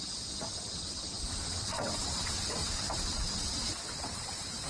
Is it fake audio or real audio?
fake